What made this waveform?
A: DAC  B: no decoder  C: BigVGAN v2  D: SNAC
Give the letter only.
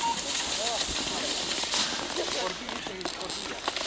B